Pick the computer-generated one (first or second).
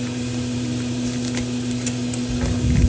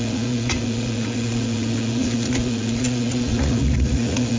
second